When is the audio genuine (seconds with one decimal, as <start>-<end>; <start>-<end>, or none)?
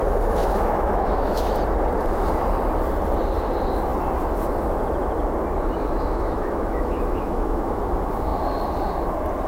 0.0-0.4; 1.6-5.8; 7.8-9.5